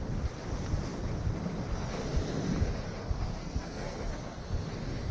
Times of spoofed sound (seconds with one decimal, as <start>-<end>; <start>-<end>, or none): 3.4-4.4